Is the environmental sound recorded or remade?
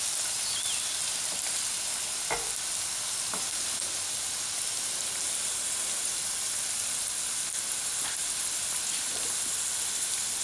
recorded